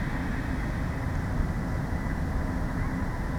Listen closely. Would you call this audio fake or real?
real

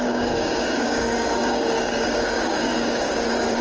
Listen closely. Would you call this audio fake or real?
fake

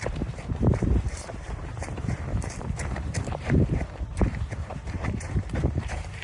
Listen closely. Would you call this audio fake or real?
fake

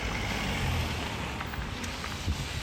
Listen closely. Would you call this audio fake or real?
real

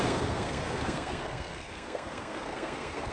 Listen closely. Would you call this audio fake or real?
fake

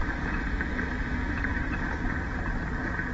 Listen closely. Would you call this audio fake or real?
real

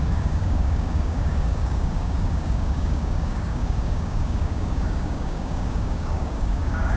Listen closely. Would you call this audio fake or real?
fake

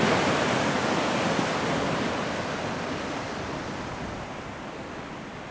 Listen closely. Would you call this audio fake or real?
fake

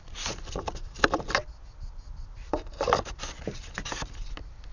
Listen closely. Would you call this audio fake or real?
real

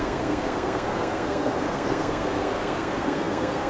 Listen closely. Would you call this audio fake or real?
fake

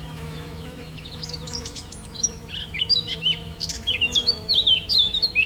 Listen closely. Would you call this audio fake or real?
fake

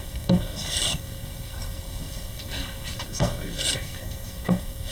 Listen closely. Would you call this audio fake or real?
fake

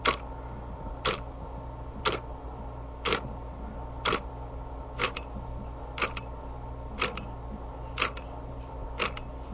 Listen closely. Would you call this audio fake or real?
real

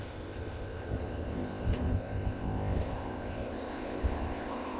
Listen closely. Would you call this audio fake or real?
fake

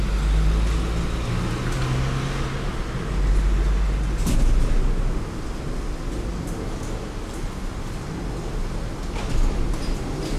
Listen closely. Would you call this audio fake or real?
real